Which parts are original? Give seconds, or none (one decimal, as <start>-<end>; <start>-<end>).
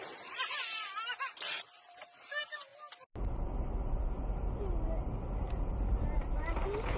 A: 2.7-5.9